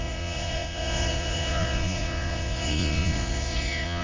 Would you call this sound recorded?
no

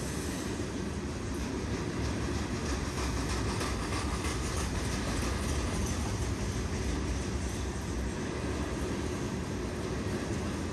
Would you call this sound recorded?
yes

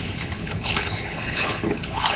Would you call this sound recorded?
no